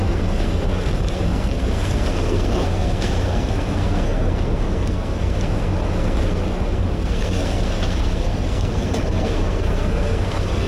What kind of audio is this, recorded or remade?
remade